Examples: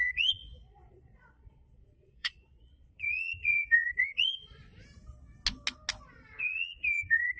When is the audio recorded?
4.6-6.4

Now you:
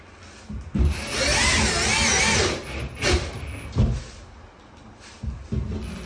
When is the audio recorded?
0.0-6.1

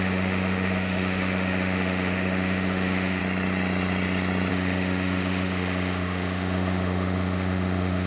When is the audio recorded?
3.2-4.5

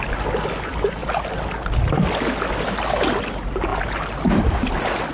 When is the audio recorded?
0.0-5.1

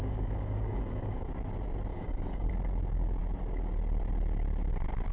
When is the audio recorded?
1.3-1.9; 2.5-5.1

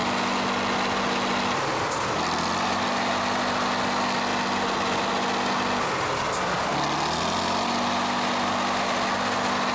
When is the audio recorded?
0.0-9.7

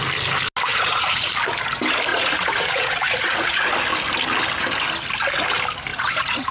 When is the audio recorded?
0.0-0.7; 1.3-2.1; 3.7-5.9